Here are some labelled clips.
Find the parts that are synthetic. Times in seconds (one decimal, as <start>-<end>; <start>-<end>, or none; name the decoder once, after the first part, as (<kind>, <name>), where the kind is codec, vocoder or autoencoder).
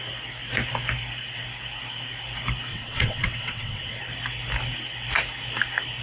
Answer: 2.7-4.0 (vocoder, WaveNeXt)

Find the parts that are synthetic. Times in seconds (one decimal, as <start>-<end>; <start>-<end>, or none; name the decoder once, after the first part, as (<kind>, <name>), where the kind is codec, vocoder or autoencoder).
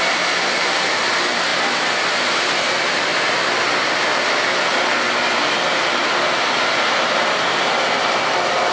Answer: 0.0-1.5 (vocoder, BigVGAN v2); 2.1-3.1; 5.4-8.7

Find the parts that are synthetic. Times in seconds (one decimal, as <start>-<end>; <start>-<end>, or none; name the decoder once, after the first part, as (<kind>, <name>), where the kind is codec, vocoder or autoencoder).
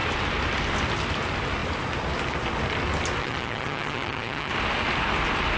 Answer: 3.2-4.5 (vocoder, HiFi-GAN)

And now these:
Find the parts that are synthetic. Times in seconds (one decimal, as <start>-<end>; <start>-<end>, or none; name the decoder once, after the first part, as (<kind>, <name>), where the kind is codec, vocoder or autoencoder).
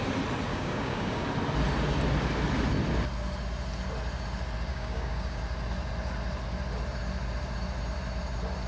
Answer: 0.5-1.3 (codec, DAC); 4.7-5.4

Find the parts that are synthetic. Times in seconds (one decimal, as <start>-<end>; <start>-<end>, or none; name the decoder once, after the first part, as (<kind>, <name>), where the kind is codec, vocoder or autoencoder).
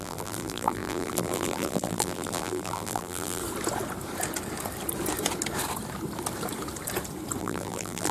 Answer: 0.0-3.4 (vocoder, BigVGAN v2); 7.4-8.1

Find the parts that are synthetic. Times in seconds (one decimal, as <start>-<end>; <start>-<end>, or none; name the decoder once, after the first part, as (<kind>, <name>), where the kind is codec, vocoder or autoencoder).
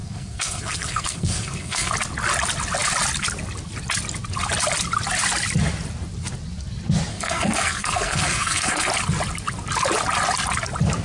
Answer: 0.0-1.9 (codec, SNAC); 7.1-8.9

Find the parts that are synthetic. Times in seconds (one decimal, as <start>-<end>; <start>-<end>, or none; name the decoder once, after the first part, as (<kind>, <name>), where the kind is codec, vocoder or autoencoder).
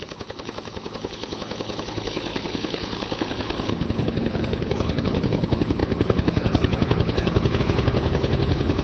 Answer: 0.0-8.8 (codec, HILCodec)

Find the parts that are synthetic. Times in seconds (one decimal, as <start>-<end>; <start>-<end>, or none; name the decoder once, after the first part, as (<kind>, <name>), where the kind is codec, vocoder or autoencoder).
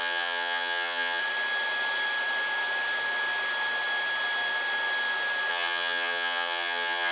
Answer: 0.0-1.2 (vocoder, HiFi-GAN); 5.5-7.1